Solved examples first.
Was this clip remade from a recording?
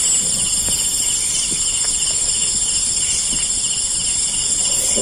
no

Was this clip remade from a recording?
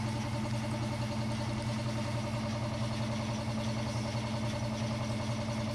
no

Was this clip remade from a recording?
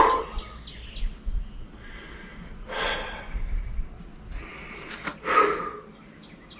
no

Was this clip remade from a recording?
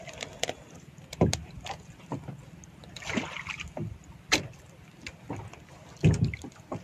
no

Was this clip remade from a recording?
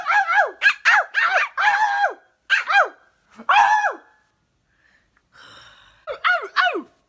no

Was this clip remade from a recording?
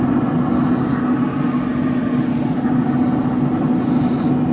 no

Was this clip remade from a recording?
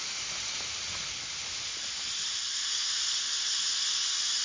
no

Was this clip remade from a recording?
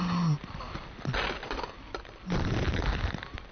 no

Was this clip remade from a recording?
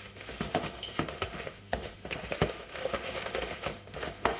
yes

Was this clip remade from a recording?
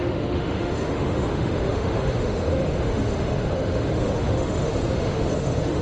yes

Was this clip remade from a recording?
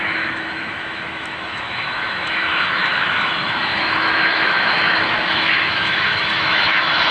yes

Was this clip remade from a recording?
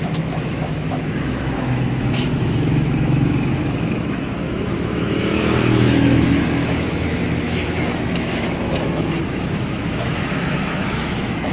yes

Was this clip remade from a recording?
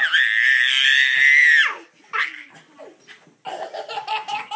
no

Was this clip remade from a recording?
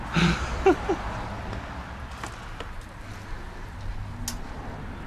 no